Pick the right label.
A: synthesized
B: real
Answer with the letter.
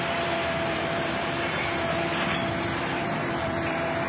A